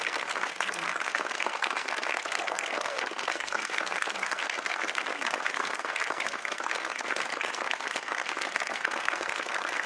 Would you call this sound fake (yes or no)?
yes